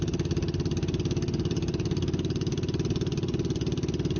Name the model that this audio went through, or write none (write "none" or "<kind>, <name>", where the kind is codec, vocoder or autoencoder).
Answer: none